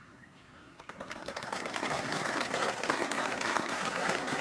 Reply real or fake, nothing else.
fake